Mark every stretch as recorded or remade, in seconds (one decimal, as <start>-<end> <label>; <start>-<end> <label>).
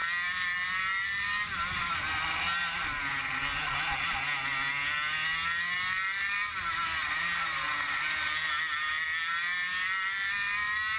0.0-11.0 recorded